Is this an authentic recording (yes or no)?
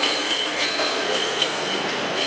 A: no